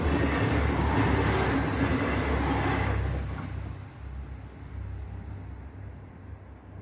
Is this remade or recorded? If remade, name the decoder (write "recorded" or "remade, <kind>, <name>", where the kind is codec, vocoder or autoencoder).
recorded